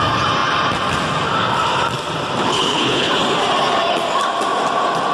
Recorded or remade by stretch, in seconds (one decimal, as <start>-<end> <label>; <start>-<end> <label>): 0.0-2.5 recorded; 2.5-3.1 remade; 3.1-5.1 recorded